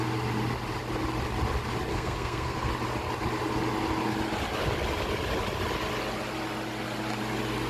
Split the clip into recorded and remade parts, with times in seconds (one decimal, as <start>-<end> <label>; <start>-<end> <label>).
0.0-1.9 recorded; 1.9-2.7 remade; 2.7-7.7 recorded

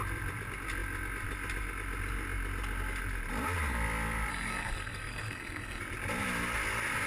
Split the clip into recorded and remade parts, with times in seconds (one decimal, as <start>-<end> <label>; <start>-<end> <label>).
0.0-4.3 recorded; 4.3-5.8 remade; 5.8-7.1 recorded

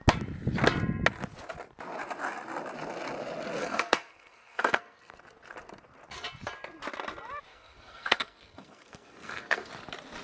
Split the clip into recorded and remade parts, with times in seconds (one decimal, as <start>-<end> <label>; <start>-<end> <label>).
0.0-3.6 recorded; 3.6-5.0 remade; 5.0-7.5 recorded; 7.5-9.7 remade; 9.7-10.2 recorded

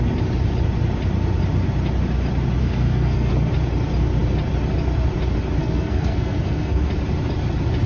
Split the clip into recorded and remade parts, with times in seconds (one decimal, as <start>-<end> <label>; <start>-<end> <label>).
0.0-2.6 recorded; 2.6-3.3 remade; 3.3-5.6 recorded; 5.6-6.9 remade; 6.9-7.9 recorded